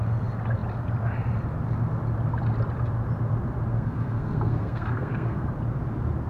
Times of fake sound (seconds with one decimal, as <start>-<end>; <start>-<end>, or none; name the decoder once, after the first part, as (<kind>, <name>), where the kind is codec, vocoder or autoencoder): 3.7-5.5 (codec, SNAC)